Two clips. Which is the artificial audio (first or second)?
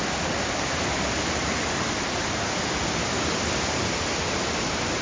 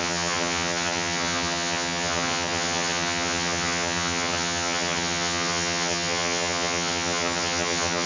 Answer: second